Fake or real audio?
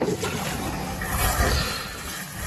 real